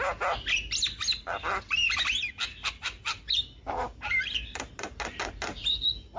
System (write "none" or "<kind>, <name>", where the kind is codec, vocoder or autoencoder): none